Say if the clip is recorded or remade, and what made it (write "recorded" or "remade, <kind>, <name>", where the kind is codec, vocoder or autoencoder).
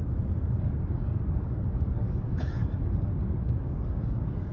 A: remade, codec, DAC